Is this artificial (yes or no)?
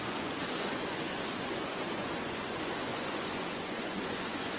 yes